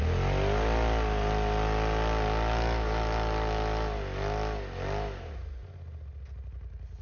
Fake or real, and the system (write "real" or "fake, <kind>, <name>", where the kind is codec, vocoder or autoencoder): real